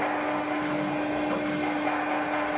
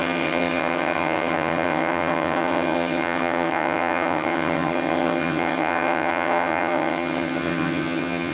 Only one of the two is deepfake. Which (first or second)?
second